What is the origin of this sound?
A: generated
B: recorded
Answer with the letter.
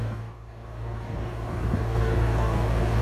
A